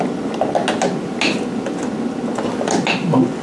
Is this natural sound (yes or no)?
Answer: yes